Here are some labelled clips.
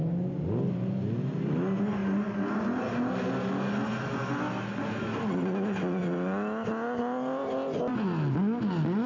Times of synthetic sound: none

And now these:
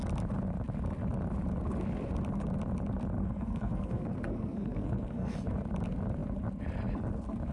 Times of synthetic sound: 3.2-5.3

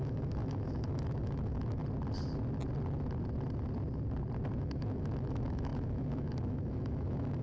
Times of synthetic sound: 0.0-1.8; 4.6-7.4

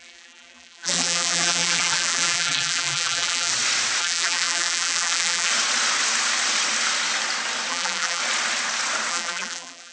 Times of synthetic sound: 0.0-3.5; 4.0-5.5; 7.7-8.2; 9.1-9.9

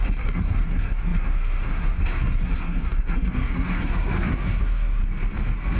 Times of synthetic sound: 0.0-5.0

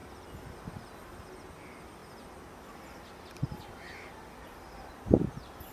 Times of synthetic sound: none

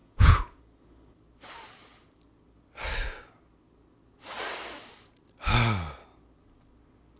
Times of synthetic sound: 0.0-0.6

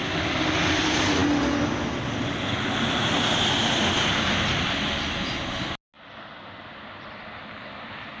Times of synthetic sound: none